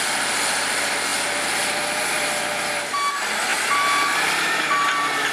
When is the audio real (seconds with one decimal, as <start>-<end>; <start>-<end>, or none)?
0.0-5.3